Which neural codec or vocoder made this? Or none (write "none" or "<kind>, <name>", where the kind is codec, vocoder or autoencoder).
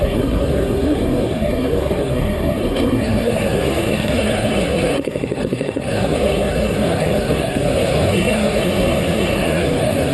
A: codec, SNAC